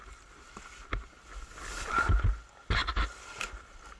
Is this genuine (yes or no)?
yes